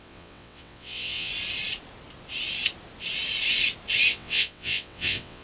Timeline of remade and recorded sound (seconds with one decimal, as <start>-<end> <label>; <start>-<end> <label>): 0.0-1.3 remade; 1.3-4.1 recorded; 4.1-5.4 remade